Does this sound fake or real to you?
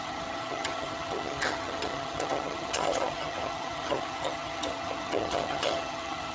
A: fake